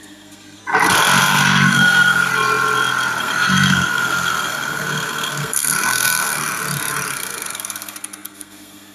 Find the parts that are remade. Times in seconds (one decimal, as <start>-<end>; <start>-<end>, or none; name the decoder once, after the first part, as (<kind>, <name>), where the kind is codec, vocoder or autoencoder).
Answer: 0.0-0.6 (codec, SNAC); 1.2-2.3; 3.2-6.5; 7.1-8.9